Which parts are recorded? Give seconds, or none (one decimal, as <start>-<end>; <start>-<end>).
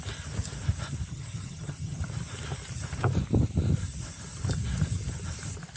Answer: 0.0-1.1; 2.0-5.8